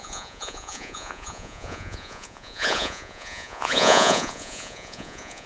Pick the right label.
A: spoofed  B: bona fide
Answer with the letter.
A